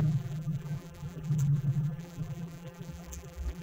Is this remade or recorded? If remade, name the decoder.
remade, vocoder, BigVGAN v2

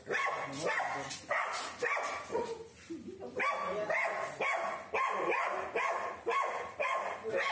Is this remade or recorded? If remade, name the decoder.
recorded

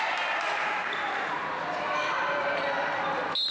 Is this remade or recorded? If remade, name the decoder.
recorded